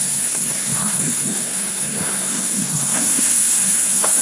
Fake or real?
fake